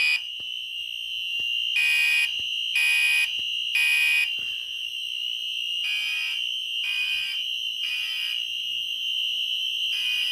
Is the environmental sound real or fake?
real